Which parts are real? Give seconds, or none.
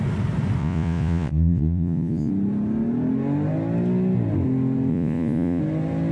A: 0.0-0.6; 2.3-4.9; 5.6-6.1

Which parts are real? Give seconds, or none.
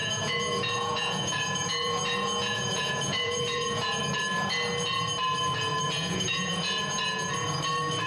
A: 4.0-5.7; 7.0-8.1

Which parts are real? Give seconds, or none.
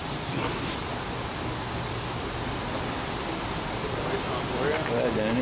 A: 0.0-5.4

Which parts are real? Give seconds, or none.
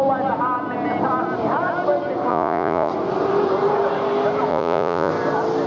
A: 0.0-2.3; 2.9-4.5; 5.1-5.7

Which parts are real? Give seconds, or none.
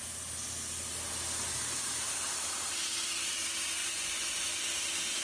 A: 0.0-3.8; 4.6-5.2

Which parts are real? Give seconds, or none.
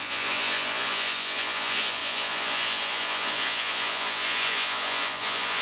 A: none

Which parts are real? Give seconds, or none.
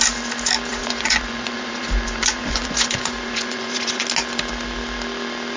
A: 0.0-0.7; 4.0-5.6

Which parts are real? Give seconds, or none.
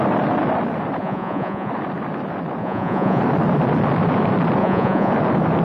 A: 0.0-1.0; 1.7-2.6; 3.2-4.6; 5.1-5.6